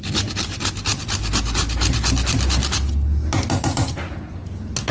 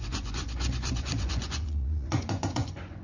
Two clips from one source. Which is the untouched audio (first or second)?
first